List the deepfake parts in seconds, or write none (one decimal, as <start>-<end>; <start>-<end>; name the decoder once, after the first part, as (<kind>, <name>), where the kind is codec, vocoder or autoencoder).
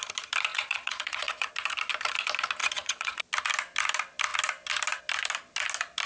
0.5-1.5 (vocoder, Vocos); 2.6-3.2